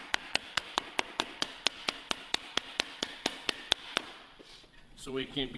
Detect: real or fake fake